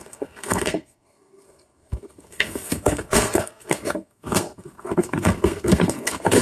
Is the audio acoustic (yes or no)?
no